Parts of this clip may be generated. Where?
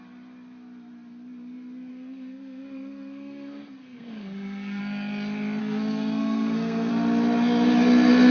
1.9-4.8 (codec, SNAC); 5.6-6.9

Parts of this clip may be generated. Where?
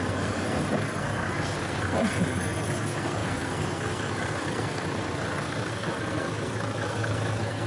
0.0-7.7 (codec, SNAC)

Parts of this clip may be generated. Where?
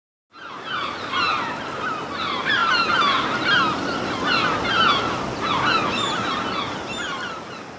none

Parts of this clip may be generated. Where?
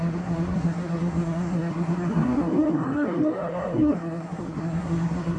0.0-5.4 (codec, SNAC)